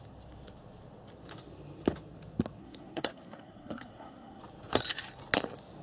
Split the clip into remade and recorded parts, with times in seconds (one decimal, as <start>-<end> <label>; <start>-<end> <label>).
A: 0.0-2.6 recorded; 2.6-4.4 remade; 4.4-5.8 recorded